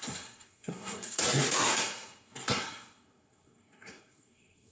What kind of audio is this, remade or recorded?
remade